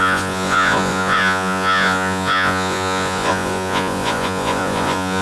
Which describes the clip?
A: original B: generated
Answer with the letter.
B